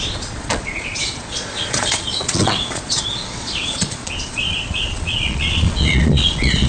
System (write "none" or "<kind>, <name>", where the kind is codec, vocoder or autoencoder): vocoder, Vocos